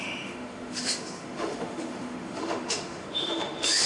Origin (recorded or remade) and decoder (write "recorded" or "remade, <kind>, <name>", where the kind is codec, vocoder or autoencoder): remade, autoencoder, DAC-VAE